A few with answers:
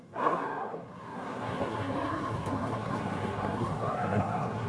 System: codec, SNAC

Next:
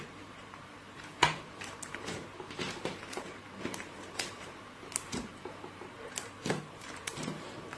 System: vocoder, BigVGAN v2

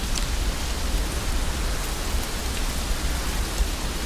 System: none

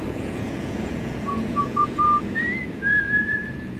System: vocoder, Vocos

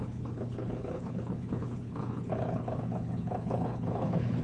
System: codec, HILCodec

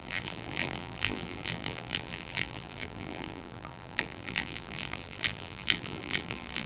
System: vocoder, BigVGAN v2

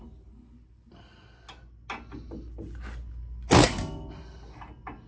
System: none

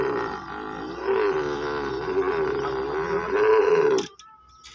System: none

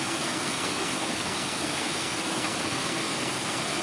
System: codec, SNAC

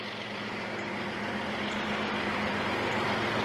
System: none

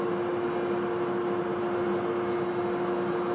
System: none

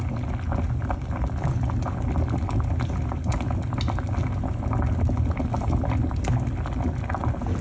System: none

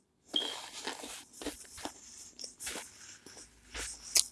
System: none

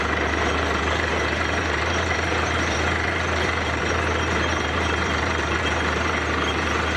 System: vocoder, BigVGAN v2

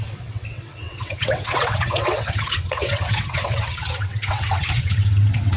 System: vocoder, WaveNeXt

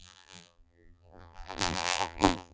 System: vocoder, BigVGAN v2